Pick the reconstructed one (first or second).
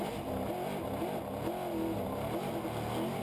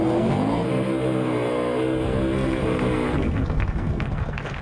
second